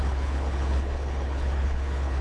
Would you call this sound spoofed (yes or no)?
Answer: yes